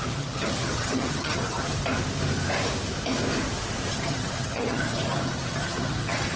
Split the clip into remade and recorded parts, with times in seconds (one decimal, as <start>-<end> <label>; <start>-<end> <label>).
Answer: 0.0-1.7 remade; 1.7-3.9 recorded; 3.9-6.4 remade